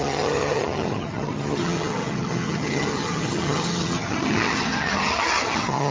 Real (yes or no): no